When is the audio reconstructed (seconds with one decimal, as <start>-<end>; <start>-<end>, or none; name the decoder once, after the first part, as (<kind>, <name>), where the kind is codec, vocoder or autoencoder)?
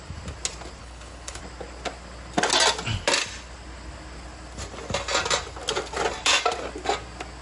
0.8-1.4 (codec, HILCodec)